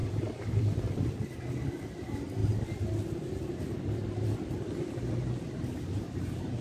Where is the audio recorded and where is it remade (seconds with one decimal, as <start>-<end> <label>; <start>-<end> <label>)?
0.0-1.4 remade; 1.4-6.6 recorded